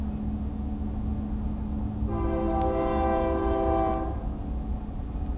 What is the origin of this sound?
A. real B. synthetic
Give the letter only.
A